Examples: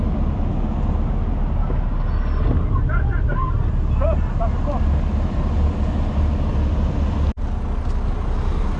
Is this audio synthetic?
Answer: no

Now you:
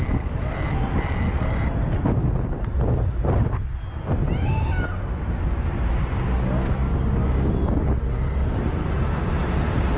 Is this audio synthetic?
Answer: no